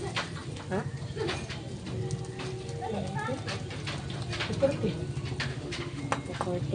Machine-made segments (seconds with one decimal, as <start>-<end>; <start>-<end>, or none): 5.5-6.0